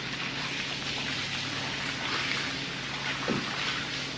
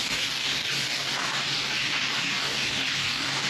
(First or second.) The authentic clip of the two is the first